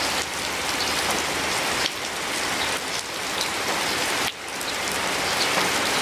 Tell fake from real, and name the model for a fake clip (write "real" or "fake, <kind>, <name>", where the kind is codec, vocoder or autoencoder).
fake, vocoder, BigVGAN v2